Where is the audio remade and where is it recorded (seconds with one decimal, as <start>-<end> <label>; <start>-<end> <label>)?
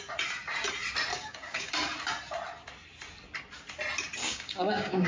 0.0-1.1 recorded; 1.1-1.7 remade; 1.7-4.2 recorded; 4.2-5.1 remade